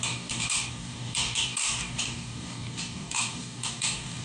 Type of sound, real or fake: fake